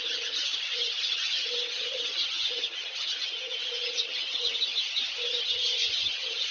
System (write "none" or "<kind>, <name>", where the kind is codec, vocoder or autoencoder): vocoder, HiFi-GAN